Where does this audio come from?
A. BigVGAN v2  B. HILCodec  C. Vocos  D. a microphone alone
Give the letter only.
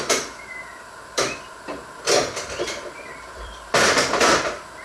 A